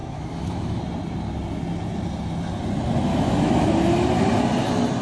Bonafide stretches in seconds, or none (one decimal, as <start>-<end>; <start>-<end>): 0.8-3.1; 3.7-5.0